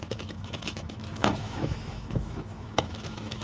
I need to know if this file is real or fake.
fake